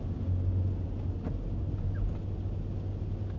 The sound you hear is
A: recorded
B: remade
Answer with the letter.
A